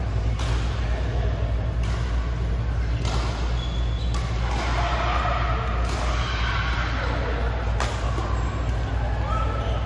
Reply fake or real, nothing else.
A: real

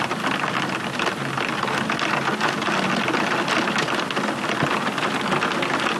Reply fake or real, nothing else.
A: real